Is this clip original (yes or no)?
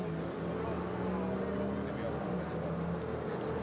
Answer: yes